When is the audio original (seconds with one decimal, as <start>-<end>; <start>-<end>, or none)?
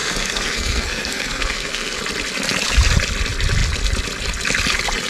2.0-5.1